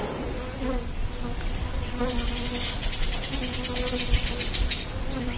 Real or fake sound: real